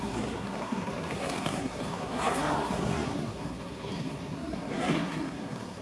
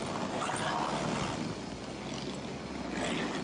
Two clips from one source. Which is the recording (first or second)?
second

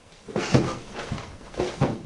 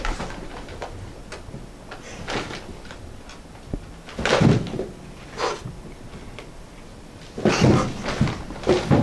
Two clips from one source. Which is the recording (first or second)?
second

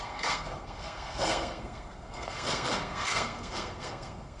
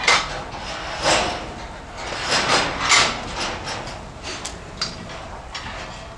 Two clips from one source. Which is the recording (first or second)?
second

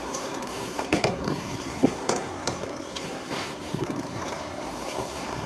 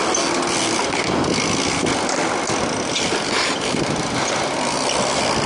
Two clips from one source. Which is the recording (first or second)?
second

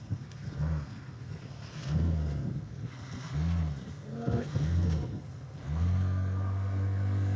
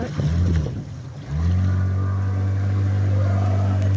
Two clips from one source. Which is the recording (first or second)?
second